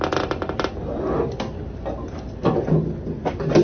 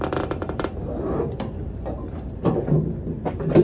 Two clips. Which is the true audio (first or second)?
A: first